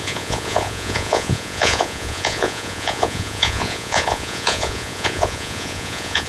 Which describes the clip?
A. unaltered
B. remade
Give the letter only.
B